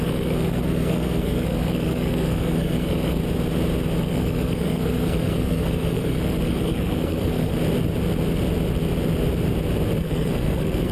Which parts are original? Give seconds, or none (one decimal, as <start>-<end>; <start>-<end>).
3.2-4.0; 7.5-10.0